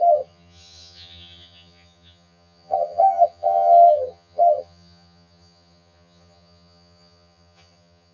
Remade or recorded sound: remade